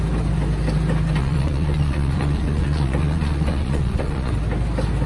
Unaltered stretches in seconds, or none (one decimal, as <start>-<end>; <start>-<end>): 0.0-1.2; 4.3-5.1